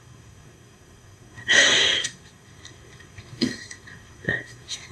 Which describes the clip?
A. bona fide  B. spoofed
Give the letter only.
B